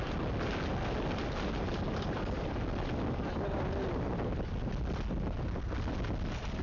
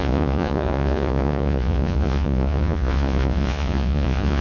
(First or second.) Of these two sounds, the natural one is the first